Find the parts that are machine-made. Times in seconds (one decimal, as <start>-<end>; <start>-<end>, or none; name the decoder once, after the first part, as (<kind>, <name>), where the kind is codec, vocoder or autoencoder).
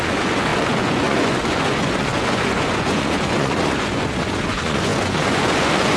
0.0-6.0 (vocoder, Vocos)